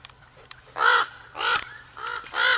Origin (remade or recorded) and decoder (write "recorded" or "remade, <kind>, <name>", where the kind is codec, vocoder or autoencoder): remade, vocoder, BigVGAN v2